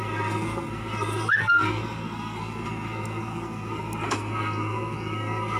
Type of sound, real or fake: fake